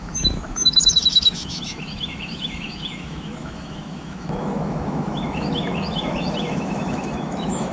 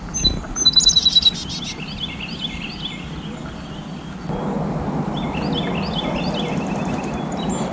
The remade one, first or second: first